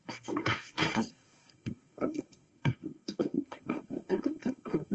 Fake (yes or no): yes